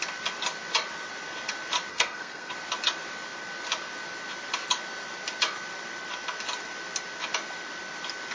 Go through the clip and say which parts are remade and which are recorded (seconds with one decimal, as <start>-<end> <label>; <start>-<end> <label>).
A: 0.0-1.9 recorded; 1.9-2.5 remade; 2.5-8.3 recorded